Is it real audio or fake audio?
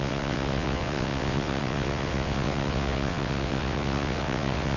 fake